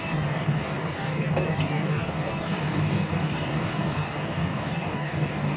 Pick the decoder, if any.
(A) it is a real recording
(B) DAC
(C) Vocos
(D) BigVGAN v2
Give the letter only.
B